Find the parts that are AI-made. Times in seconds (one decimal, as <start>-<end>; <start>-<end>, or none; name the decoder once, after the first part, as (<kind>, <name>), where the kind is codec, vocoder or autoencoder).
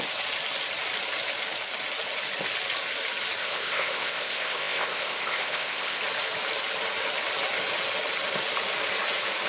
3.4-6.0 (codec, ZipCodec)